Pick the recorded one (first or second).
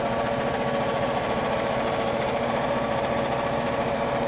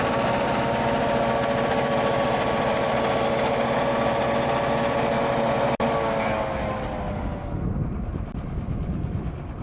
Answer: second